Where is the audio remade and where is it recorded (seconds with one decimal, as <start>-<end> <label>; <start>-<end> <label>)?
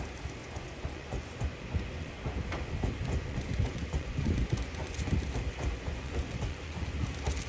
0.0-0.4 recorded; 0.4-2.1 remade; 2.1-3.0 recorded; 3.0-5.1 remade; 5.1-5.5 recorded; 5.5-7.0 remade; 7.0-7.5 recorded